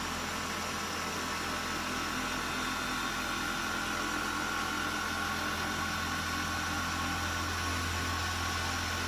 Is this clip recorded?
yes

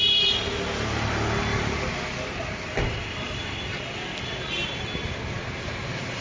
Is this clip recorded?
yes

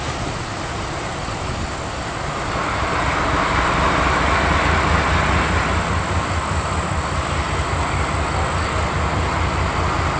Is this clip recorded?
yes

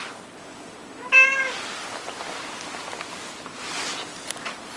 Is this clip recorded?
yes